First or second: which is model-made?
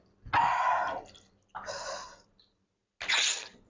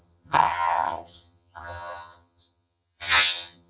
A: second